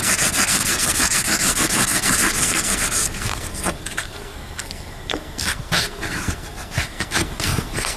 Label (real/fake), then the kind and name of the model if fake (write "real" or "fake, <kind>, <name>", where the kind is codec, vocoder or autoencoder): fake, codec, SNAC